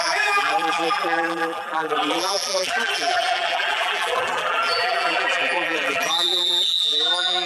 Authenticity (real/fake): fake